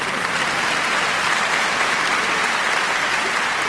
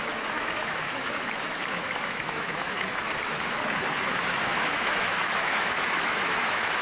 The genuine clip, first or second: first